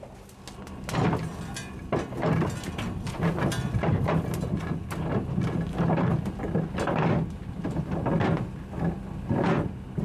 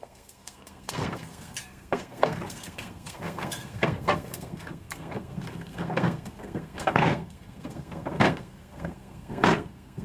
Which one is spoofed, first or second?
second